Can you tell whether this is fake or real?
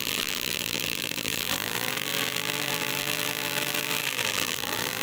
fake